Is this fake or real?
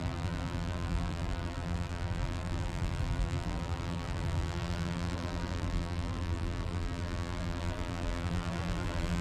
fake